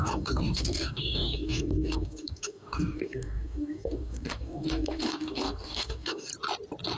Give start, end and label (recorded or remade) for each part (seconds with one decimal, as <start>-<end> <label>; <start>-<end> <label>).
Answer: 0.0-6.3 remade; 6.3-7.0 recorded